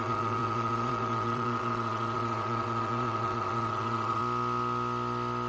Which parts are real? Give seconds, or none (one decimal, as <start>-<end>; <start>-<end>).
4.2-5.5